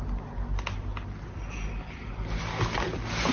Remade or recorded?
recorded